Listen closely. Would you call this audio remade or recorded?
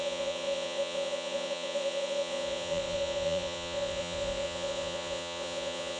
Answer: remade